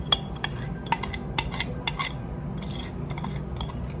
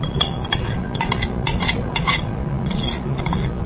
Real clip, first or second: first